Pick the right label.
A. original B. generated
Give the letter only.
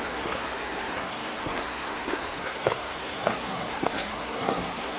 B